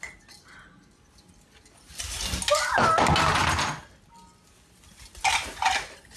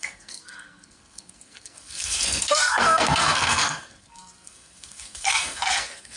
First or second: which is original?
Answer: first